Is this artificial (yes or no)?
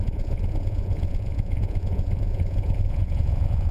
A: yes